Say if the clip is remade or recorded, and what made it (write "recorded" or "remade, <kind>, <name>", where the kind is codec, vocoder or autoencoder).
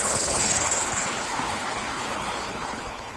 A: remade, codec, HILCodec